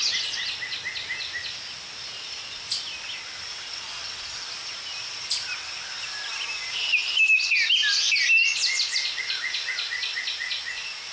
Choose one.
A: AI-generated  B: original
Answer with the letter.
B